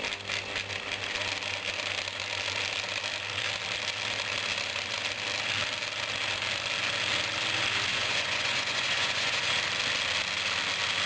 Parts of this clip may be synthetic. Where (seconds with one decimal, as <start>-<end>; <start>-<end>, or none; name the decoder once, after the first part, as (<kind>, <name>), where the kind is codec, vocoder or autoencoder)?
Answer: 7.9-9.5 (vocoder, Vocos)